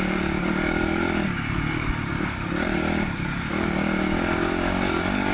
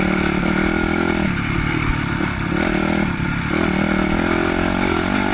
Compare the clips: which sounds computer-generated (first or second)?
first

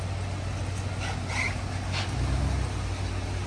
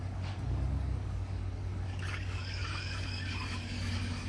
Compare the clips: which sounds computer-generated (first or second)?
second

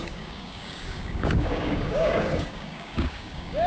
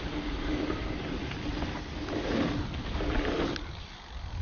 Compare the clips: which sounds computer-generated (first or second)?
first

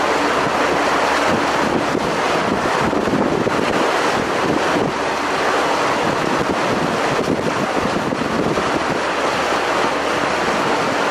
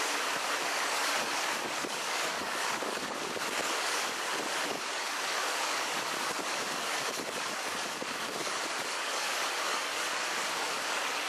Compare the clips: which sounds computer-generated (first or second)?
second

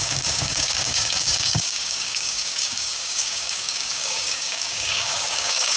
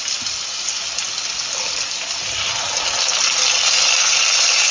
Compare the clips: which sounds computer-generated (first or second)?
first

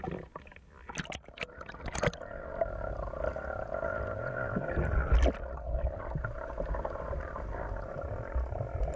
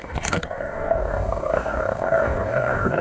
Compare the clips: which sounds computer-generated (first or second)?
second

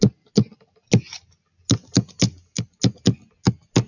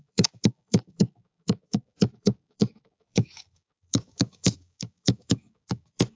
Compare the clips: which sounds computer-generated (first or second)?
second